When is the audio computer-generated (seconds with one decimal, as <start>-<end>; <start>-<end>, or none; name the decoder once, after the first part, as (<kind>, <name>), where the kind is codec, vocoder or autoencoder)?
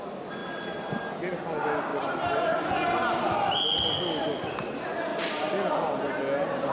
0.4-1.0 (vocoder, BigVGAN v2); 5.1-6.2